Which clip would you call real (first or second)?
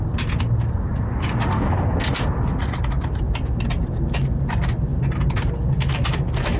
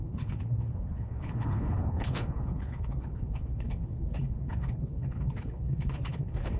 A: first